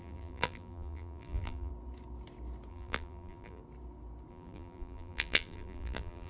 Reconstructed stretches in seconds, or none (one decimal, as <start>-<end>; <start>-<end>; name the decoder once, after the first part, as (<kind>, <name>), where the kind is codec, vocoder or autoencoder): 0.0-1.7 (vocoder, BigVGAN v2); 2.7-3.6; 4.3-6.3

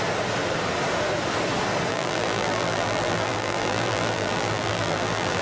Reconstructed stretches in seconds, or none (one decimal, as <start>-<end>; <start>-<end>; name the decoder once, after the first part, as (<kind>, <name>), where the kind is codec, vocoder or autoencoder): 1.9-5.4 (vocoder, BigVGAN v2)

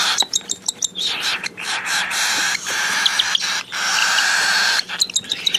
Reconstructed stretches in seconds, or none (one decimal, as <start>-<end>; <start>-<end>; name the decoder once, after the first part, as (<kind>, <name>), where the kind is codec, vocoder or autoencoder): 0.0-2.9 (vocoder, BigVGAN v2); 4.0-4.9

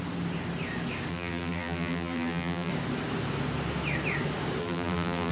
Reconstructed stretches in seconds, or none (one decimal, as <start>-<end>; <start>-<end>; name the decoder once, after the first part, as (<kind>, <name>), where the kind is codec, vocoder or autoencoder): 1.1-2.7 (vocoder, BigVGAN v2); 4.6-5.3

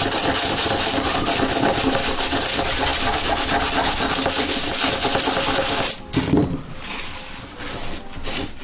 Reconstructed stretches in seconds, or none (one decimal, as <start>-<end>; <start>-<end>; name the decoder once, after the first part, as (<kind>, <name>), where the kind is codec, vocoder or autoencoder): none

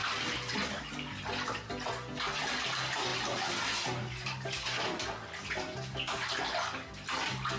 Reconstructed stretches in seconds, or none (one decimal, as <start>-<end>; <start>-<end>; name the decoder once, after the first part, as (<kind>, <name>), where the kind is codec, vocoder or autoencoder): 0.0-0.5 (vocoder, BigVGAN v2)